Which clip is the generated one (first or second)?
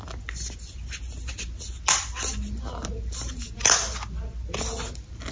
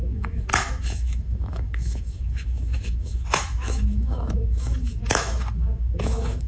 second